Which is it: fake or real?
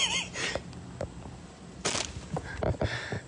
real